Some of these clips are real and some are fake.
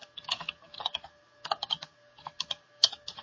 fake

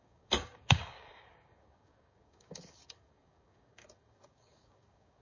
fake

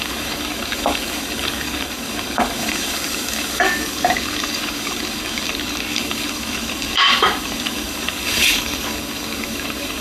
fake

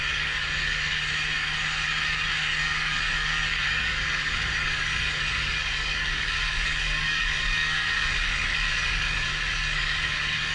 fake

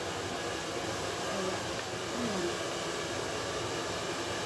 real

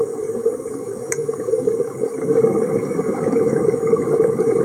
fake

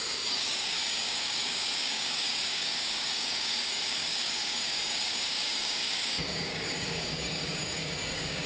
fake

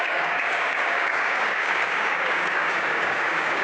fake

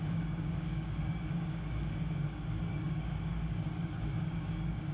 fake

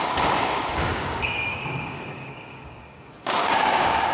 fake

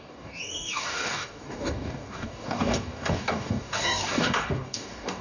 fake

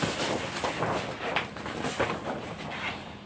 real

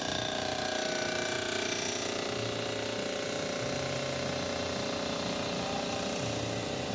real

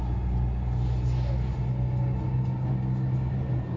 real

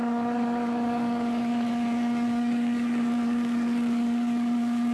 fake